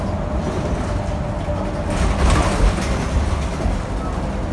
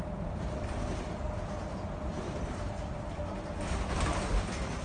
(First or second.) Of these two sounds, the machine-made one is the second